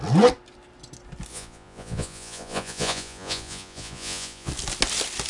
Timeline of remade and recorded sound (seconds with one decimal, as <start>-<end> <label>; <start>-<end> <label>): 0.0-1.3 recorded; 1.3-4.5 remade; 4.5-5.3 recorded